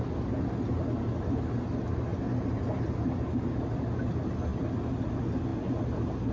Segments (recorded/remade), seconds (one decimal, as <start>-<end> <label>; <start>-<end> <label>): 0.0-6.3 recorded